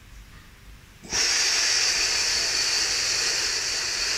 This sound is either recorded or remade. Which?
recorded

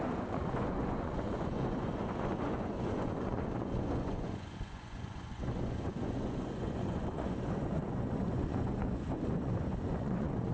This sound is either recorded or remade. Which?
remade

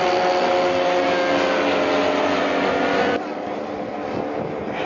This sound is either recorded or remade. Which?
recorded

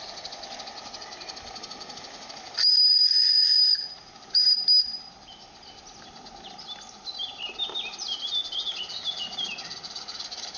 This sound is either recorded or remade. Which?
recorded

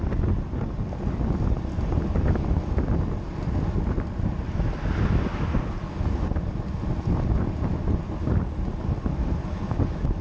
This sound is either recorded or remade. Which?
recorded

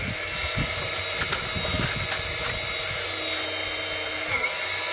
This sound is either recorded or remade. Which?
recorded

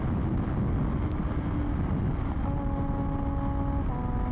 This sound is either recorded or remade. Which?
recorded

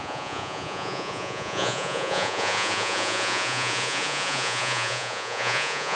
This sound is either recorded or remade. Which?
remade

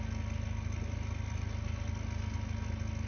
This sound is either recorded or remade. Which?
recorded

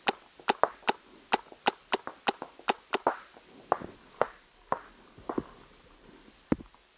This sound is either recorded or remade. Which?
recorded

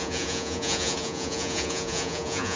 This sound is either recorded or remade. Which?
remade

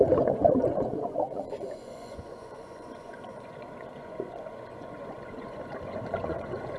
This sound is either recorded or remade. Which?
remade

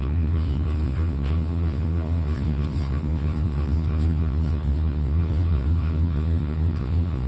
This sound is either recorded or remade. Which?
remade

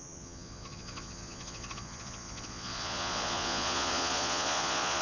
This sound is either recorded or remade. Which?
remade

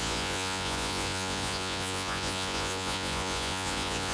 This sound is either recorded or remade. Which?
remade